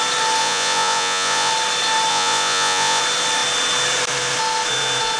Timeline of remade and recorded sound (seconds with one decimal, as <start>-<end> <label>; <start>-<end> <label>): 0.0-0.4 recorded; 0.4-1.5 remade; 1.5-2.1 recorded; 2.1-3.0 remade; 3.0-5.2 recorded